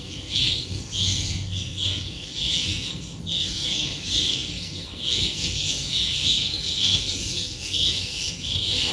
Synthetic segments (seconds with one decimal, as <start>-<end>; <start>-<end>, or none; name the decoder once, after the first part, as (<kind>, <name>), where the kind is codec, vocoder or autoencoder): 0.0-8.9 (codec, SNAC)